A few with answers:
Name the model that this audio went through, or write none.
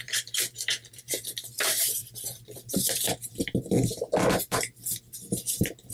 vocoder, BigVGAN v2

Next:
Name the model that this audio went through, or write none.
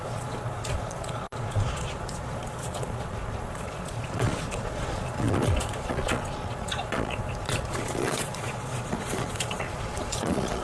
vocoder, Vocos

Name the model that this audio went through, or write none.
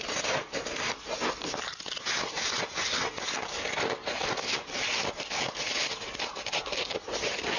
none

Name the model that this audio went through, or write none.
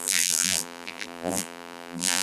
vocoder, BigVGAN v2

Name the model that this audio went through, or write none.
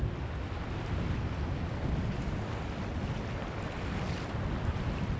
none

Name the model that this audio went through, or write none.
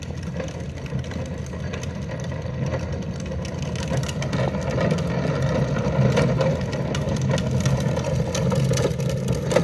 none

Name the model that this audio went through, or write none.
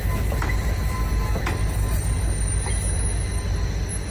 none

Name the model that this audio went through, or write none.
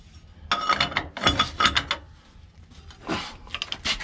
none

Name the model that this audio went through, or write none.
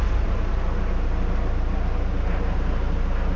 none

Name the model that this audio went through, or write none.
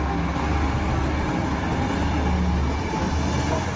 none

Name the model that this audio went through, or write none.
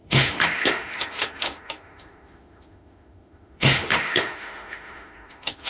autoencoder, DAC-VAE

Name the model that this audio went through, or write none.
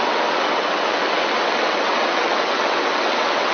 vocoder, WaveNeXt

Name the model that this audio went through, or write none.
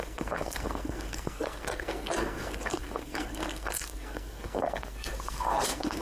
codec, SNAC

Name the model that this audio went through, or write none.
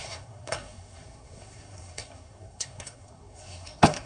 codec, SNAC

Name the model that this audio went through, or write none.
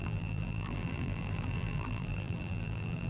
vocoder, BigVGAN v2